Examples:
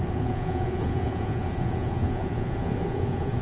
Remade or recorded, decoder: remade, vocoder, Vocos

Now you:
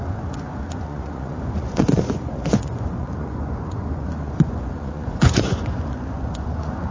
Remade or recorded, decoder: remade, vocoder, Vocos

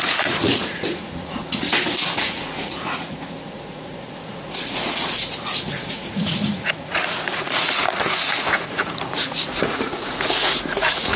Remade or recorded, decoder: remade, vocoder, Vocos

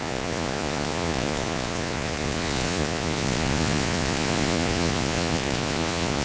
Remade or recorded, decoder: remade, vocoder, Vocos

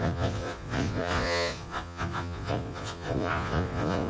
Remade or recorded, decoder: remade, vocoder, Vocos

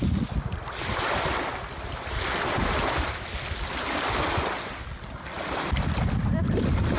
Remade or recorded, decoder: recorded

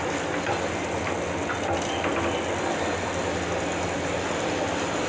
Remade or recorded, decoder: recorded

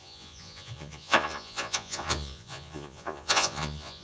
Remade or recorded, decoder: remade, vocoder, Vocos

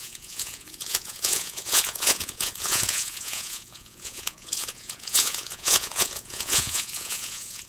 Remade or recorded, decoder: remade, vocoder, Vocos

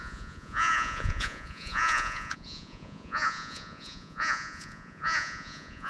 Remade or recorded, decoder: remade, vocoder, Vocos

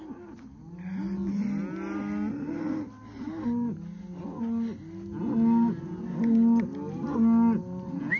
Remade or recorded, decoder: recorded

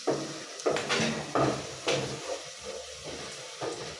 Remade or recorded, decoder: recorded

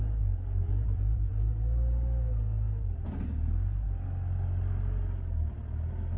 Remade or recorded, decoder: recorded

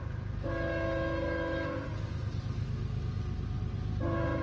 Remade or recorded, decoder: recorded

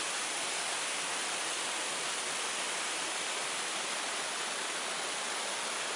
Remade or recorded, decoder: recorded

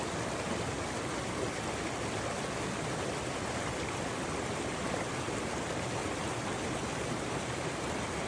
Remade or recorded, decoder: recorded